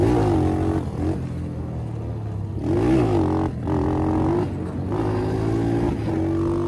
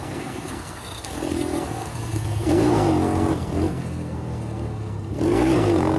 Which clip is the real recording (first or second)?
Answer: first